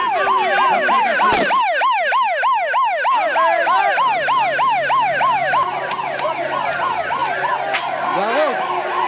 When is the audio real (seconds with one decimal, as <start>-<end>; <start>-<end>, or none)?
0.0-9.1